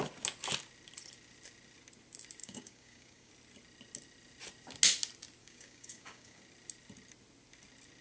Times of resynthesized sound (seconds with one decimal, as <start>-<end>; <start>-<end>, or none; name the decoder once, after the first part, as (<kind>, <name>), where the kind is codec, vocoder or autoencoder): 2.4-3.3 (codec, DAC); 5.4-6.4